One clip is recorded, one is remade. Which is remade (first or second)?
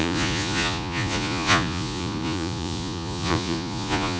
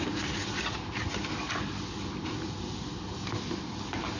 first